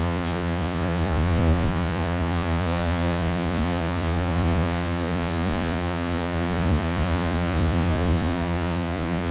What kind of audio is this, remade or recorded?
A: remade